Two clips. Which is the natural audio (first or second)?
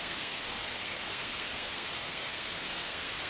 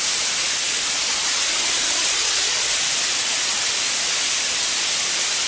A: second